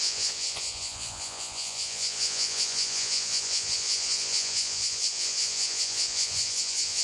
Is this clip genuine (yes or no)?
no